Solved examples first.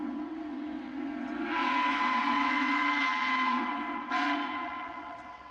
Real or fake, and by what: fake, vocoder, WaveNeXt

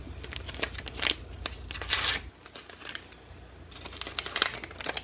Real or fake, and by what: real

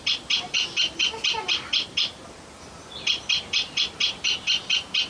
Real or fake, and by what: real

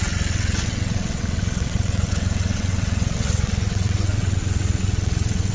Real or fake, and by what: fake, vocoder, WaveNeXt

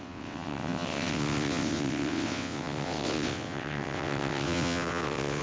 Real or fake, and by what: fake, vocoder, WaveNeXt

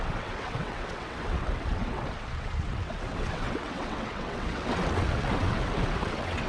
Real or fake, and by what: fake, vocoder, WaveNeXt